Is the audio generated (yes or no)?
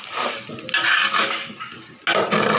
no